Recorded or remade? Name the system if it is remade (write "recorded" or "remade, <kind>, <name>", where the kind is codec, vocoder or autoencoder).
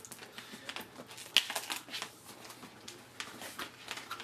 recorded